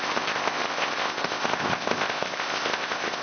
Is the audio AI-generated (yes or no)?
yes